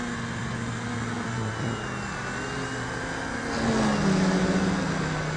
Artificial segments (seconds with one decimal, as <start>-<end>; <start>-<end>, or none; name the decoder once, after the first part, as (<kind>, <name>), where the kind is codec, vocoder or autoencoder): none